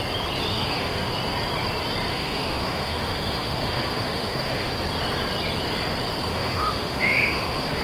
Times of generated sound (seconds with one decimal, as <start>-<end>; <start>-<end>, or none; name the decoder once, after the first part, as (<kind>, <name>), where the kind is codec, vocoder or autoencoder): 0.5-1.1 (autoencoder, DAC-VAE); 2.1-4.7; 6.3-7.8